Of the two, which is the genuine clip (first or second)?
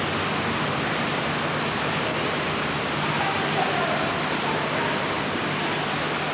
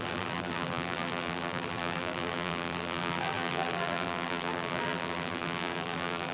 first